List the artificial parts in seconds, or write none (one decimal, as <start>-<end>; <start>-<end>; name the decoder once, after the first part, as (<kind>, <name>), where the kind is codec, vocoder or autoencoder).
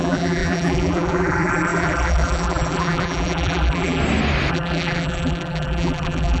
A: 0.0-4.0 (vocoder, BigVGAN v2); 4.5-6.4